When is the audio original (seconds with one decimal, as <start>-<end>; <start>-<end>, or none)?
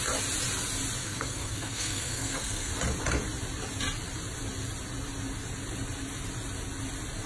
0.0-1.0; 2.7-7.3